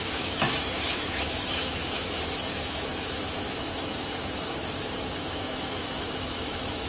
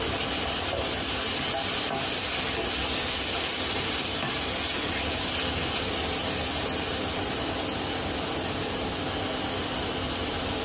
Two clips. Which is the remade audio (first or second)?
first